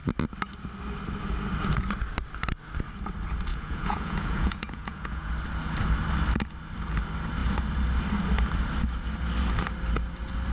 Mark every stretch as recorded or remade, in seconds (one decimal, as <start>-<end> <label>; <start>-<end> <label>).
0.0-3.5 recorded; 3.5-5.3 remade; 5.3-10.5 recorded